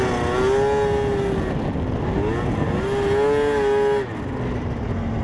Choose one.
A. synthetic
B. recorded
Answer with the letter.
B